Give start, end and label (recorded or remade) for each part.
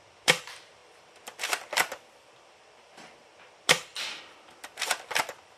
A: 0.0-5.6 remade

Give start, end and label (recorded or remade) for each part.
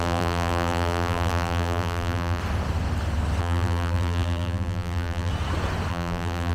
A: 0.0-2.4 remade; 2.4-3.4 recorded; 3.4-5.3 remade; 5.3-5.9 recorded; 5.9-6.5 remade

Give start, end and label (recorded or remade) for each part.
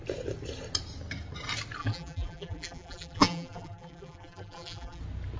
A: 0.0-1.8 recorded; 1.8-5.0 remade; 5.0-5.4 recorded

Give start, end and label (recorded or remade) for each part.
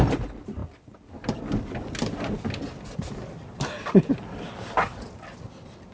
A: 0.0-5.9 remade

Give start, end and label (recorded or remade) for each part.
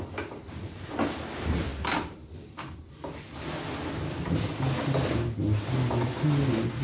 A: 0.0-6.8 recorded